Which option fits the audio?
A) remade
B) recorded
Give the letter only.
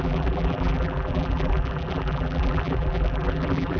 A